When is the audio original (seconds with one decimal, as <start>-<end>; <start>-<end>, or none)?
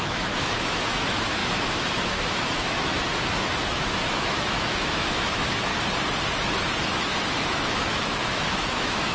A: 5.7-6.9